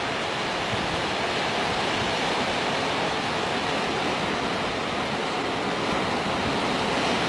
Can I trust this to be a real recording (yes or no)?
yes